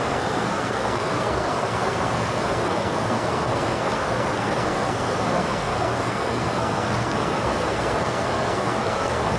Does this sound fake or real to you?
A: fake